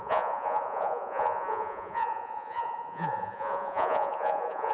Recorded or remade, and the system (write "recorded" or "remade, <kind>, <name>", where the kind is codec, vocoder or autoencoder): remade, vocoder, Vocos